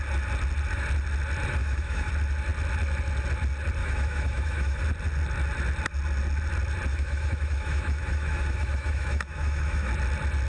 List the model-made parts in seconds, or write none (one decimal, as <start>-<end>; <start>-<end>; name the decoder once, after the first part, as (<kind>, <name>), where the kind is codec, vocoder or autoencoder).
1.6-2.1 (autoencoder, DAC-VAE); 3.8-4.8; 6.9-9.9